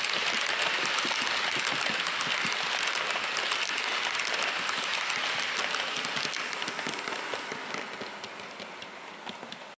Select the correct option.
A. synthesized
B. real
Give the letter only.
B